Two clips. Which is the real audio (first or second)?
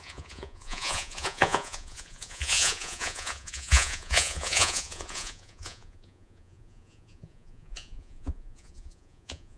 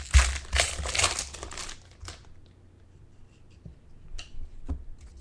second